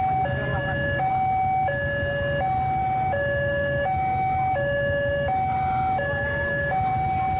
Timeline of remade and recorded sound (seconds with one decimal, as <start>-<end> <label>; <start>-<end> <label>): 0.0-0.5 recorded; 0.5-1.1 remade; 1.1-2.8 recorded; 2.8-6.9 remade; 6.9-7.4 recorded

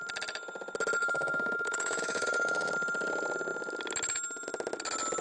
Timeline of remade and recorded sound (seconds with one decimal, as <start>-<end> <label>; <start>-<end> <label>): 0.0-1.0 recorded; 1.0-2.7 remade; 2.7-5.2 recorded

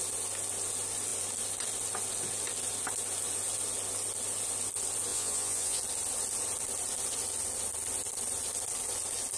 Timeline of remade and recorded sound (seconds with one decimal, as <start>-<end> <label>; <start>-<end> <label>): 0.0-5.1 recorded; 5.1-5.8 remade; 5.8-9.4 recorded

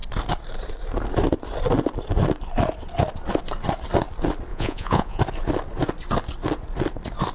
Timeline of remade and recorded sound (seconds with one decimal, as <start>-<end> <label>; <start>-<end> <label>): 0.0-4.5 recorded; 4.5-5.2 remade; 5.2-7.3 recorded

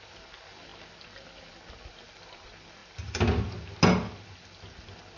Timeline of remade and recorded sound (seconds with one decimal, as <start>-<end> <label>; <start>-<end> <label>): 0.0-5.2 recorded

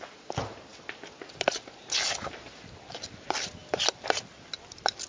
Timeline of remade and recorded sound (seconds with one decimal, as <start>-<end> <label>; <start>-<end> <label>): 0.0-5.1 recorded